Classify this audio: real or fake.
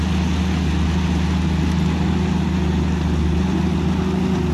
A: real